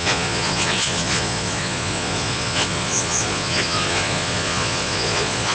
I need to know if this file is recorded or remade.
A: remade